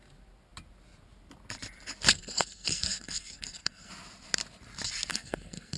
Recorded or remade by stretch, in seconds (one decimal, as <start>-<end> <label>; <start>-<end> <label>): 0.0-2.1 recorded; 2.1-3.9 remade; 3.9-5.1 recorded; 5.1-5.8 remade